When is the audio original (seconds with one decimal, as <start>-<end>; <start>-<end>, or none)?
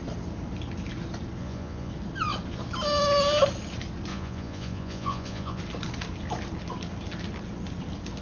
0.0-1.4; 1.9-4.1; 5.6-8.2